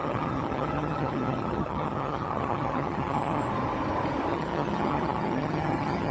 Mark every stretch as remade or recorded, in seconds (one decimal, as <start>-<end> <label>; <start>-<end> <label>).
0.0-3.4 remade; 3.4-4.3 recorded; 4.3-6.1 remade